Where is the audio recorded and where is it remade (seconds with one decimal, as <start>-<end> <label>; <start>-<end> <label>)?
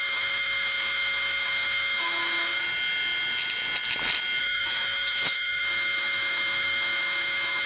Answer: 0.0-2.6 remade; 2.6-4.4 recorded; 4.4-7.7 remade